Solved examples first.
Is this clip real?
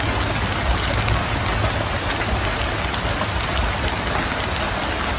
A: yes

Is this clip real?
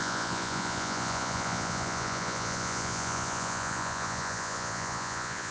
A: no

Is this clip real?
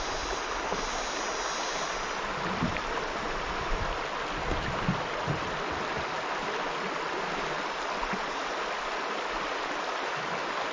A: yes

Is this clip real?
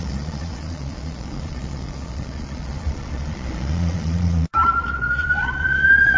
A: no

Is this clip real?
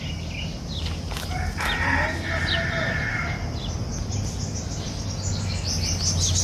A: yes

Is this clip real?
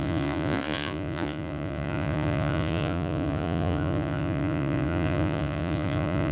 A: no